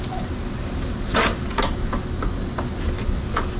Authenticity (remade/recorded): recorded